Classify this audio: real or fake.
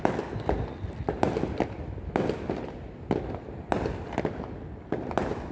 real